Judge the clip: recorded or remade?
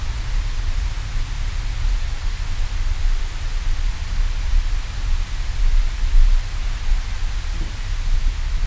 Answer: recorded